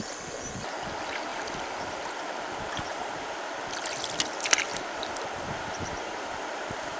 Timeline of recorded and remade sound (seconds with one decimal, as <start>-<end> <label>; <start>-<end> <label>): 0.0-2.9 recorded; 2.9-3.5 remade; 3.5-4.7 recorded; 4.7-7.0 remade